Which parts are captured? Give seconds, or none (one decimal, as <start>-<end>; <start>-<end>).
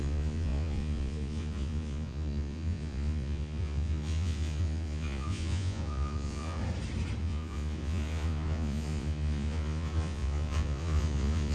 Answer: 6.6-7.2